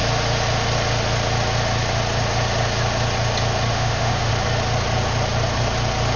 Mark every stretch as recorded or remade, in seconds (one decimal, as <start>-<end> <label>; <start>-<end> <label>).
0.0-3.7 recorded; 3.7-4.3 remade; 4.3-6.2 recorded